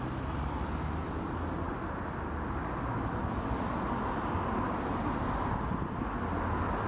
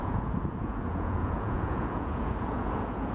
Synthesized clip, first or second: second